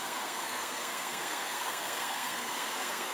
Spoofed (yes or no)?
yes